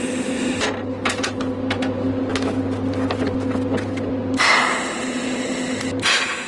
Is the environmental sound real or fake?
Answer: real